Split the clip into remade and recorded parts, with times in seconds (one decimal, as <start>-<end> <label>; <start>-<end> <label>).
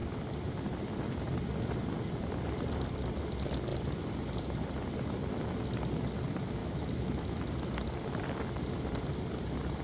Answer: 0.0-6.6 recorded; 6.6-7.5 remade; 7.5-9.8 recorded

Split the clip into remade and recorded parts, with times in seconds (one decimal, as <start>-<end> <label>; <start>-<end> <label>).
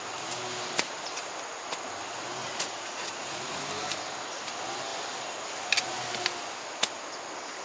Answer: 0.0-2.4 recorded; 2.4-3.6 remade; 3.6-7.6 recorded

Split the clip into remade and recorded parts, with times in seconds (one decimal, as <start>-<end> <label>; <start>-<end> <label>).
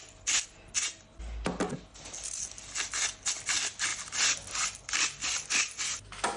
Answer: 0.0-6.4 recorded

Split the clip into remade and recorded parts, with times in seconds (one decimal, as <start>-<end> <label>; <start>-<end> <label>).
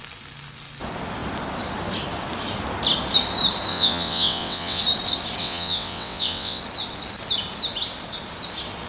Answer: 0.0-3.7 recorded; 3.7-4.8 remade; 4.8-5.4 recorded; 5.4-6.6 remade; 6.6-8.9 recorded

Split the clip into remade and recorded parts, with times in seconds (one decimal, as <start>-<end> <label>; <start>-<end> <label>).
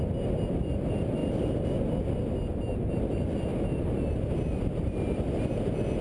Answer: 0.0-6.0 recorded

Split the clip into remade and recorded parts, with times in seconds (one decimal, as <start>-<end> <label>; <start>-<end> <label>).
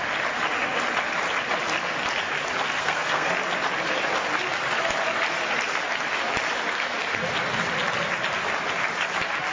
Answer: 0.0-2.8 recorded; 2.8-3.3 remade; 3.3-9.5 recorded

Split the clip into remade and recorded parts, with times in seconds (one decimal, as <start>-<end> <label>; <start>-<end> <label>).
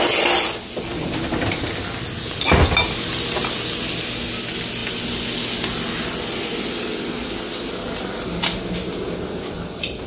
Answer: 0.0-10.1 recorded